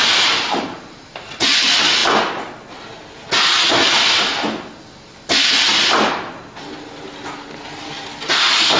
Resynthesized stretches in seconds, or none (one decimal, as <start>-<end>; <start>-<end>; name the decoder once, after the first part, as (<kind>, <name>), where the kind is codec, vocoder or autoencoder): none